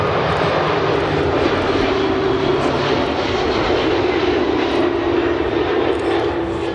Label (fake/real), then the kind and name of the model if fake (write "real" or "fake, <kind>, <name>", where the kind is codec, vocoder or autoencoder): real